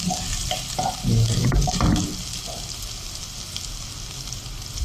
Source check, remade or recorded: recorded